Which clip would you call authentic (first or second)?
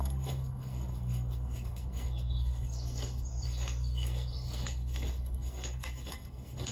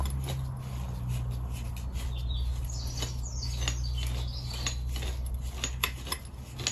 second